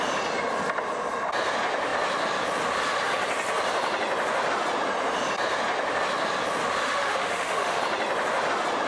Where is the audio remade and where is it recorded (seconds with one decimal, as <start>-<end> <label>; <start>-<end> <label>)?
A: 0.0-6.8 recorded; 6.8-7.8 remade; 7.8-8.9 recorded